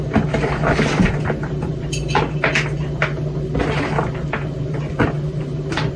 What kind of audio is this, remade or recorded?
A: recorded